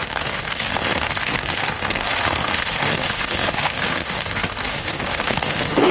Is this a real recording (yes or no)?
no